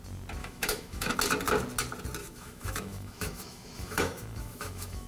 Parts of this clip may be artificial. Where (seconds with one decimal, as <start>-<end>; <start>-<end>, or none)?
0.4-1.2; 2.2-5.1